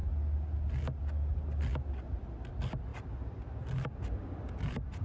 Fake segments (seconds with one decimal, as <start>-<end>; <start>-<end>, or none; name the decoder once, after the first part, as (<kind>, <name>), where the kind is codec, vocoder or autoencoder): none